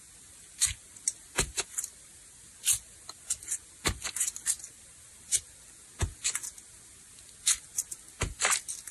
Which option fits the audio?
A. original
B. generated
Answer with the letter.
A